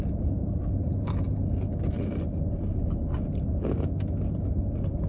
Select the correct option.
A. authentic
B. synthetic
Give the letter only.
A